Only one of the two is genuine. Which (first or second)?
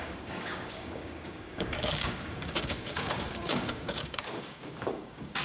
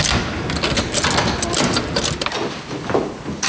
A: second